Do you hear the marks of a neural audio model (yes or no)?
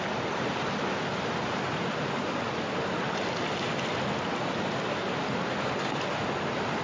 no